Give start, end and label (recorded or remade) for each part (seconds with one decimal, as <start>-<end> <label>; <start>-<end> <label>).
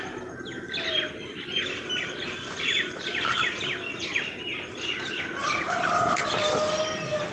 0.0-5.4 recorded; 5.4-6.7 remade; 6.7-7.3 recorded